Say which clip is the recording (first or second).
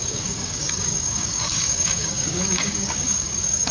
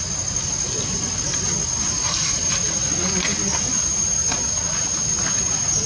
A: second